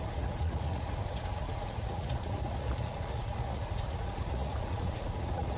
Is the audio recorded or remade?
remade